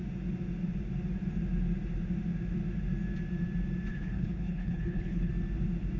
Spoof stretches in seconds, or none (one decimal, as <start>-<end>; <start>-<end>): 3.9-5.3